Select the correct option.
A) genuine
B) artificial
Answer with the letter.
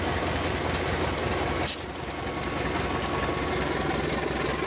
A